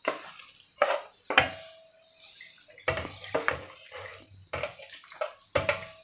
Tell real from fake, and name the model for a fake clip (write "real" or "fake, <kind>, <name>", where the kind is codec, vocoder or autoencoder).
real